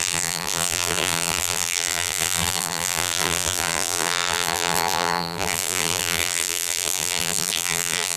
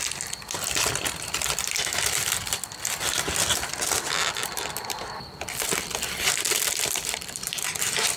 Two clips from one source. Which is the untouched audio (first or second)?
second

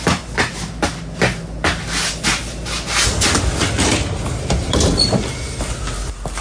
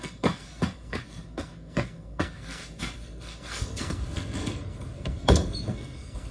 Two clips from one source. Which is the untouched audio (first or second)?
first